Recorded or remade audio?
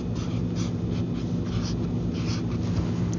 recorded